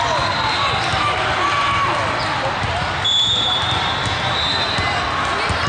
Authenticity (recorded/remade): recorded